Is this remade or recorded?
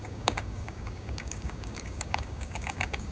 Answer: remade